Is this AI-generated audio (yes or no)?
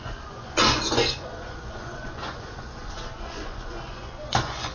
yes